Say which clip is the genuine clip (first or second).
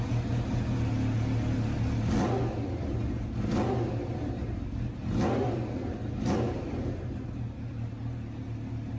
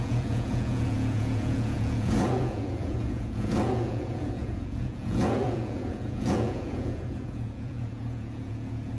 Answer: first